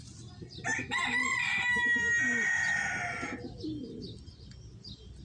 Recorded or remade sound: recorded